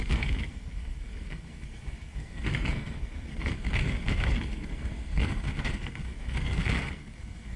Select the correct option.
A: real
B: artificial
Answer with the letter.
B